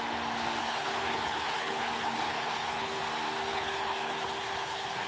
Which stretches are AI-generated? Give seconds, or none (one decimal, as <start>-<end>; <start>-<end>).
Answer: 0.6-3.0; 3.5-5.1